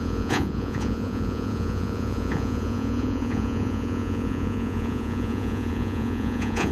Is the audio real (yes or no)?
no